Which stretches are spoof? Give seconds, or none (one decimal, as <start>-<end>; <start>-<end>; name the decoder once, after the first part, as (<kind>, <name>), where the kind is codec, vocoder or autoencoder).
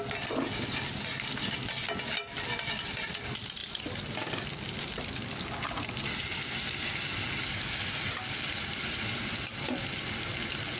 none